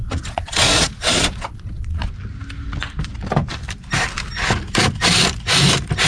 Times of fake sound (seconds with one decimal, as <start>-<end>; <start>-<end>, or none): 0.0-2.1